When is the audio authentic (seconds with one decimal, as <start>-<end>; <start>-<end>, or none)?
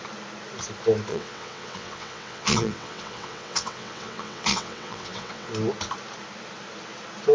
0.0-1.1; 5.5-7.3